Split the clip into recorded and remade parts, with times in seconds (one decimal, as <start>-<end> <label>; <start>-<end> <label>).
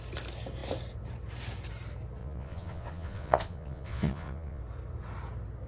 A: 0.0-2.2 recorded; 2.2-4.6 remade; 4.6-5.7 recorded